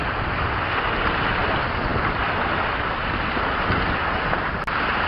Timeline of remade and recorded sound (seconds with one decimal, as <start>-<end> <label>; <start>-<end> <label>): 0.0-5.1 recorded